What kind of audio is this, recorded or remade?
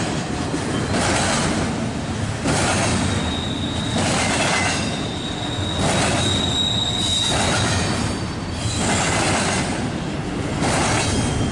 recorded